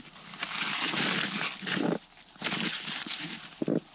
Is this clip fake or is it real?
fake